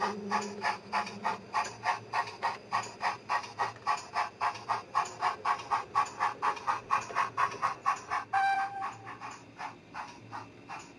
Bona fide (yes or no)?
yes